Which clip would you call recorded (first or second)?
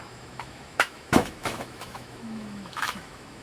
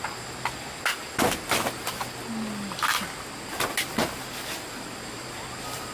second